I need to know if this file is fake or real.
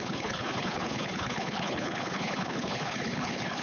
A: fake